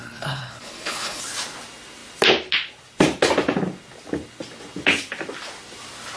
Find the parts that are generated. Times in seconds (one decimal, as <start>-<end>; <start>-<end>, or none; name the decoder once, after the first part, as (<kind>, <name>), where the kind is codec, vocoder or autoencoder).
0.0-1.2 (codec, HILCodec)